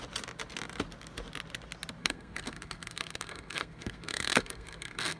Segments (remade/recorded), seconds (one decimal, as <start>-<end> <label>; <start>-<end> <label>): 0.0-2.0 recorded; 2.0-5.2 remade